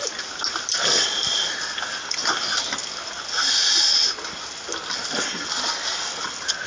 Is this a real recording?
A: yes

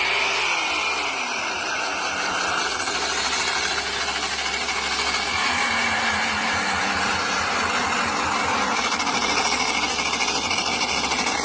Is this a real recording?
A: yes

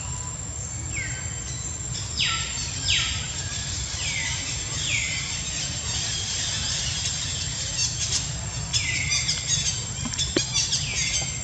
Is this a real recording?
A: yes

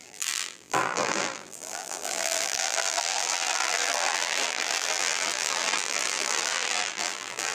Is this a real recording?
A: no